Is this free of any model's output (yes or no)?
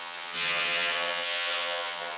no